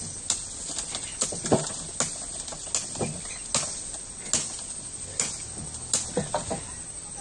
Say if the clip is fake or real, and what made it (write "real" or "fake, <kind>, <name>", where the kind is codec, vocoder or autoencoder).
real